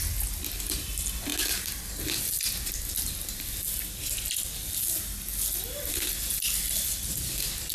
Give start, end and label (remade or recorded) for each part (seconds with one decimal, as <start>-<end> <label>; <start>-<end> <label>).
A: 0.0-7.7 recorded